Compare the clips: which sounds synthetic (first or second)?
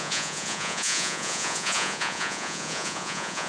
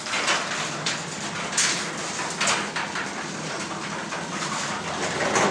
first